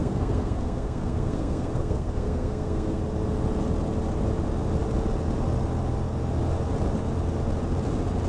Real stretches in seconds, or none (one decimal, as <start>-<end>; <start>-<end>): 3.0-8.3